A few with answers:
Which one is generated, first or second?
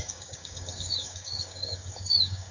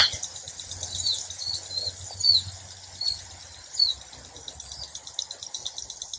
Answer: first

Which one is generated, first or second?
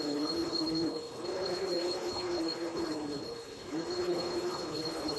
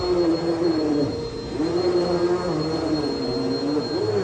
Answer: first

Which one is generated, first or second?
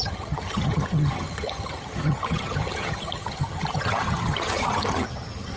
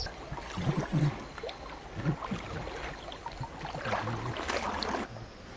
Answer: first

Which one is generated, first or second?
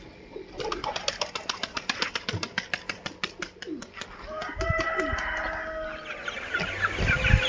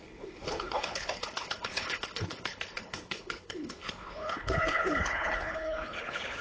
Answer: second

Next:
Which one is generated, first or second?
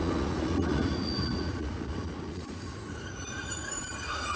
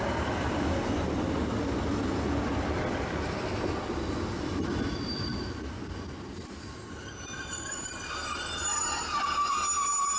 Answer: first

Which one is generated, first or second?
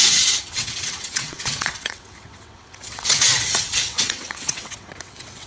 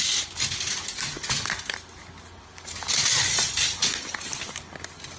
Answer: first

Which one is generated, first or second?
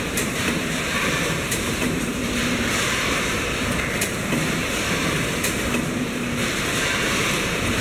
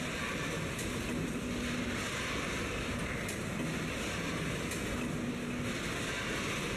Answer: first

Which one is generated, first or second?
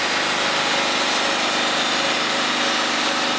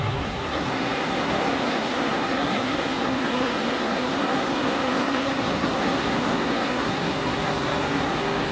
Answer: second